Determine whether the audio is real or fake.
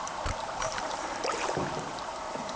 fake